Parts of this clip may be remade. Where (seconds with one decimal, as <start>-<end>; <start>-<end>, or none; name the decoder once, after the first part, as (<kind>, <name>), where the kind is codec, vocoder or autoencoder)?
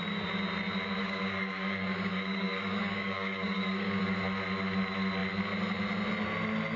1.0-4.0 (codec, DAC)